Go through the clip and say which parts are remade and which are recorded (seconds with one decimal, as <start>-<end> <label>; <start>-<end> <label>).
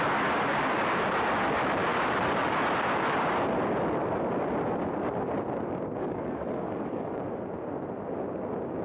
0.0-6.0 recorded; 6.0-7.4 remade; 7.4-8.8 recorded